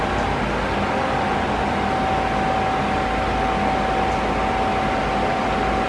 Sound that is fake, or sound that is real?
real